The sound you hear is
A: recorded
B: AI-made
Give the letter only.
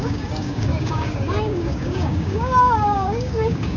B